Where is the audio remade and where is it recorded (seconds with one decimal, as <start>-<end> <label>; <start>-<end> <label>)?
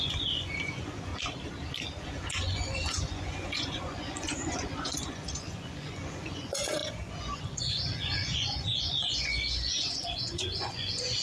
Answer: 0.0-1.1 remade; 1.1-2.0 recorded; 2.0-11.2 remade